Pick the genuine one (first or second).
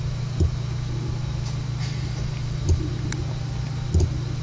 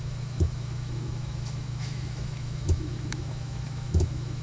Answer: first